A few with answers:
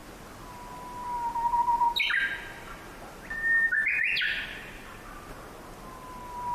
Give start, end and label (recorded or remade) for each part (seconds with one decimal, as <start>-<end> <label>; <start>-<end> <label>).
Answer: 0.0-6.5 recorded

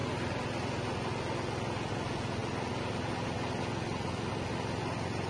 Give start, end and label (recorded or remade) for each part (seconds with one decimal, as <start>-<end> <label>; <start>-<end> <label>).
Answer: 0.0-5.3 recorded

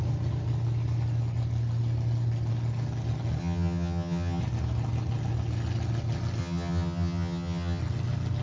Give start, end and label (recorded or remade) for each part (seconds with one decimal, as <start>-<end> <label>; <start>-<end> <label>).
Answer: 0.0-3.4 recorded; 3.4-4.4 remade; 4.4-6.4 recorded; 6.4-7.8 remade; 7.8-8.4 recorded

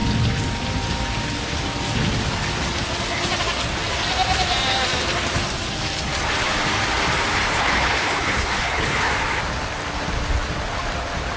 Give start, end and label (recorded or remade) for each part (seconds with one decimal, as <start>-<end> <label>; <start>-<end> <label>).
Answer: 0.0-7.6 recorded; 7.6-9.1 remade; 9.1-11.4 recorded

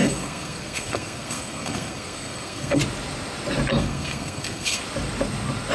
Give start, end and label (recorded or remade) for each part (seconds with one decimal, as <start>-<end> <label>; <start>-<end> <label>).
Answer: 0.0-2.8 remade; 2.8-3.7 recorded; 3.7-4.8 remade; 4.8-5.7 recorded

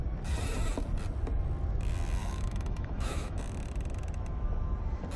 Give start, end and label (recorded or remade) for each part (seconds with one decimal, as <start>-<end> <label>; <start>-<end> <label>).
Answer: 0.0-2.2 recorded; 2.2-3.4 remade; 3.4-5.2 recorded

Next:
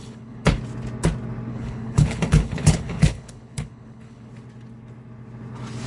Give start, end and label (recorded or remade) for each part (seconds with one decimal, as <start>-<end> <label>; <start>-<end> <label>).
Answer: 0.0-0.6 remade; 0.6-1.5 recorded; 1.5-4.3 remade; 4.3-5.9 recorded